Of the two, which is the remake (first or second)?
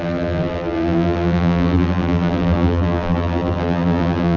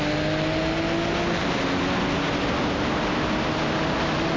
first